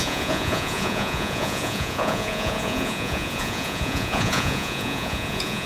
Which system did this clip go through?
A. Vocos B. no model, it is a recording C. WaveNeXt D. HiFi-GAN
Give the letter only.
A